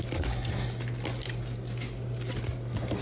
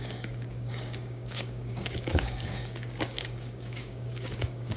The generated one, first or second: second